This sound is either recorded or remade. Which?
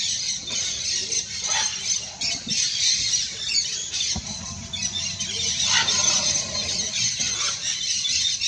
recorded